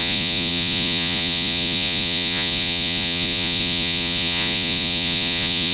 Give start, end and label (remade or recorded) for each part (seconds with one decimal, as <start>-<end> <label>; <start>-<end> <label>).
0.0-5.7 remade

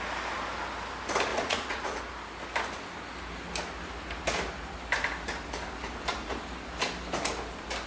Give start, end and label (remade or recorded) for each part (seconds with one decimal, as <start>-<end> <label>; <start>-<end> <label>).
0.0-1.3 recorded; 1.3-2.0 remade; 2.0-7.9 recorded

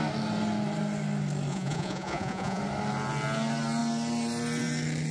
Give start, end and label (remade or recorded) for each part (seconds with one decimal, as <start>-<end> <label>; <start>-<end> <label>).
0.0-1.5 recorded; 1.5-2.6 remade; 2.6-5.1 recorded